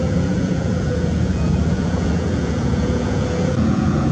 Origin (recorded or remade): remade